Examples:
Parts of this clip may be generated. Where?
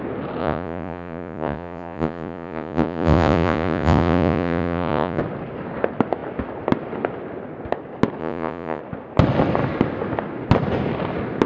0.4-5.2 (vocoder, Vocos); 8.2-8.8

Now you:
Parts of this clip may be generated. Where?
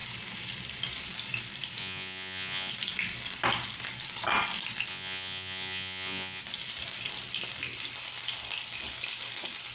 1.8-2.7 (vocoder, Vocos); 4.9-6.4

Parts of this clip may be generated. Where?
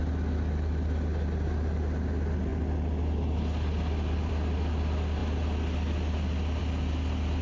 none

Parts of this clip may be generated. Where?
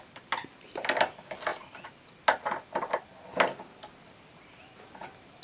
none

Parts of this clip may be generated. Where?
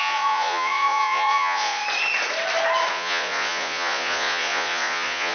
0.0-1.8 (vocoder, Vocos); 2.9-5.3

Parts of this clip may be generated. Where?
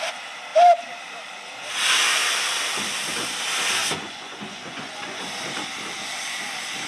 3.8-5.2 (vocoder, Vocos)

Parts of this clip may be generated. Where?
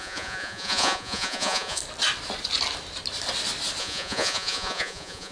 0.0-1.8 (vocoder, Vocos); 3.8-5.3